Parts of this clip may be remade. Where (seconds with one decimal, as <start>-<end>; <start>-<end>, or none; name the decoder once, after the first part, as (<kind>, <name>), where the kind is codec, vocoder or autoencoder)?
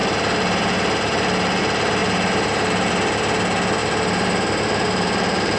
0.0-1.6 (vocoder, BigVGAN v2); 2.0-2.9; 3.8-5.6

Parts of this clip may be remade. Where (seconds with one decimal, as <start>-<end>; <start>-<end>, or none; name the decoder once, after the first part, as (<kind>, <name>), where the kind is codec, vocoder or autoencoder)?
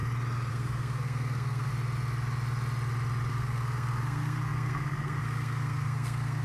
0.5-1.7 (codec, SNAC); 3.3-6.4